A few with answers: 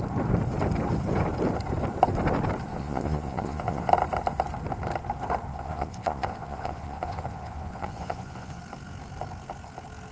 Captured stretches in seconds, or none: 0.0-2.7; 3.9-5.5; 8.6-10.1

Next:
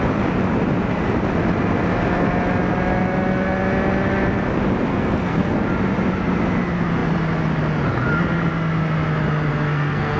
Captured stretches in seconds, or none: 0.0-4.9; 5.6-9.5